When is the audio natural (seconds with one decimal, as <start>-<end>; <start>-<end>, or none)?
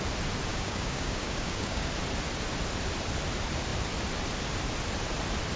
0.0-0.5; 1.9-5.6